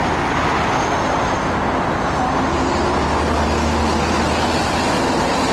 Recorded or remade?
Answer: recorded